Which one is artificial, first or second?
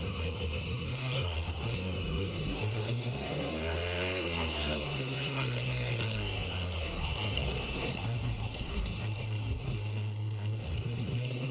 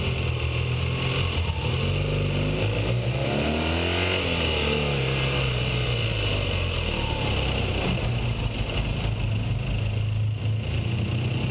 first